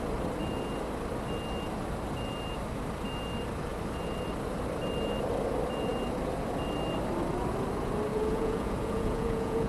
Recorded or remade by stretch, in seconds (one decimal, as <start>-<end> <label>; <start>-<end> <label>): 0.0-8.1 recorded; 8.1-9.7 remade